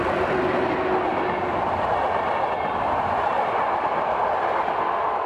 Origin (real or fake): real